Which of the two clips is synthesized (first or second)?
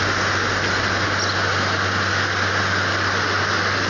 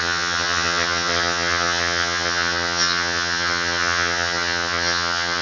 second